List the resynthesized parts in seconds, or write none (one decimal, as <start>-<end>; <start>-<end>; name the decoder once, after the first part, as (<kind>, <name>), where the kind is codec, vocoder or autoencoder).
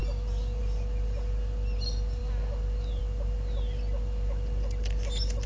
none